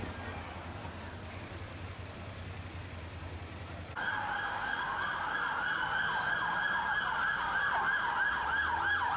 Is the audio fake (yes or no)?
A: no